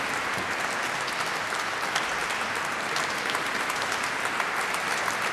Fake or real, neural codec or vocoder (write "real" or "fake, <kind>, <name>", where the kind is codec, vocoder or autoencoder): real